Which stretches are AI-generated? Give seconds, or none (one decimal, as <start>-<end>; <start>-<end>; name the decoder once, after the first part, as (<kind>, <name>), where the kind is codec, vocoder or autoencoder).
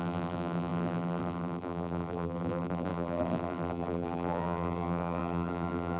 0.0-6.0 (vocoder, BigVGAN v2)